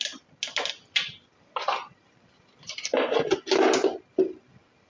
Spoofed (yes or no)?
no